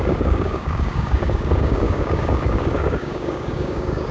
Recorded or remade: remade